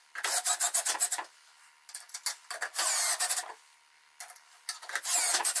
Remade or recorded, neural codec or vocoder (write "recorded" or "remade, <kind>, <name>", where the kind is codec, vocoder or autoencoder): recorded